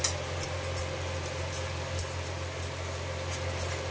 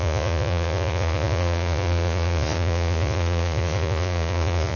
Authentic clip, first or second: first